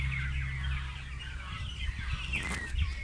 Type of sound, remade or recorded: recorded